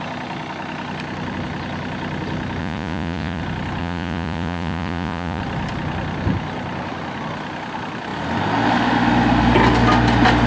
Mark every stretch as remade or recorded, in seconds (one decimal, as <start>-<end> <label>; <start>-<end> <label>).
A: 0.0-2.6 recorded; 2.6-3.4 remade; 3.4-3.8 recorded; 3.8-5.4 remade; 5.4-10.5 recorded